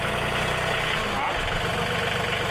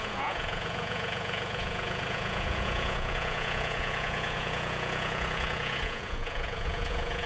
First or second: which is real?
first